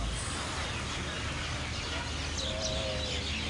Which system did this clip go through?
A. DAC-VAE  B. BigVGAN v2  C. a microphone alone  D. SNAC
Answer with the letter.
C